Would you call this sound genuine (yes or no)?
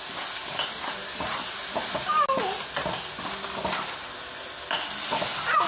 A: yes